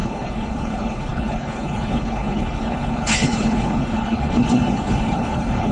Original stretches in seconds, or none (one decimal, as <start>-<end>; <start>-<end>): none